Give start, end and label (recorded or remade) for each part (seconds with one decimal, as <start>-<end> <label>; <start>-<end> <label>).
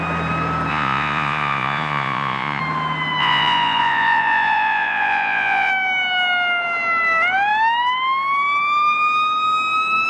0.0-0.7 recorded; 0.7-2.6 remade; 2.6-3.2 recorded; 3.2-5.7 remade; 5.7-10.1 recorded